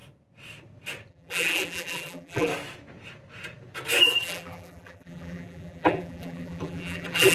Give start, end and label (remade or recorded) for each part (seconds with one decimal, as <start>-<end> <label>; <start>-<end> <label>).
0.0-1.1 recorded; 1.1-2.5 remade; 2.5-4.0 recorded; 4.0-7.3 remade